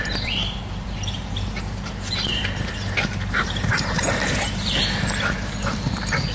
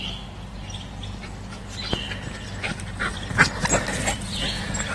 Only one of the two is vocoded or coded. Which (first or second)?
first